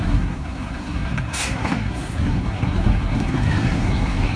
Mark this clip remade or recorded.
remade